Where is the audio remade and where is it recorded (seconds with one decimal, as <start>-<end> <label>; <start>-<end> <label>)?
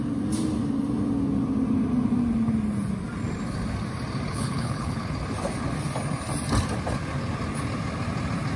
0.0-4.3 recorded; 4.3-5.1 remade; 5.1-8.6 recorded